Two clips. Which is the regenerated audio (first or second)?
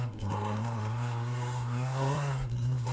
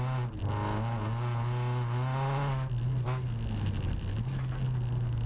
first